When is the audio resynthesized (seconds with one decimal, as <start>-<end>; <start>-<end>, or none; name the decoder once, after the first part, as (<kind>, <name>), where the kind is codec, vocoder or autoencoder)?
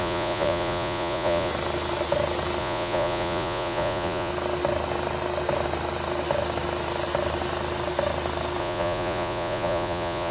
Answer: 0.0-1.5 (vocoder, Vocos); 2.6-4.3; 8.6-10.3